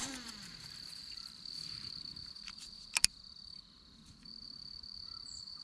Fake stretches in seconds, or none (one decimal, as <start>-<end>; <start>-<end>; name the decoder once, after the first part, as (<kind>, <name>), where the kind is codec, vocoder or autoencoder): 0.0-5.6 (vocoder, BigVGAN v2)